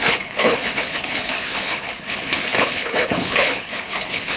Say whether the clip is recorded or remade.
remade